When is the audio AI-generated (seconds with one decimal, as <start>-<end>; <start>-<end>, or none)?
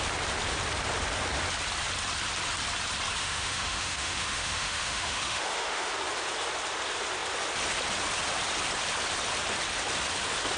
3.2-5.9